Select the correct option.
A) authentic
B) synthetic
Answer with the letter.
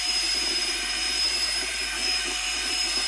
B